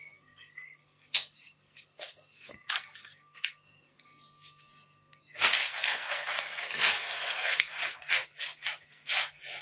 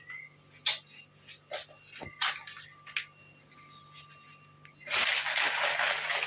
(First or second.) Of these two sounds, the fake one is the first